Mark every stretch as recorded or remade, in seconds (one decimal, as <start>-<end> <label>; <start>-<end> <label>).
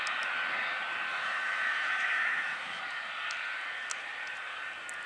0.0-1.1 recorded; 1.1-2.8 remade; 2.8-5.1 recorded